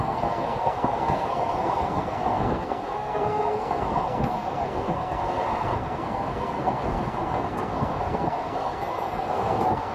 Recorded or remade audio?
remade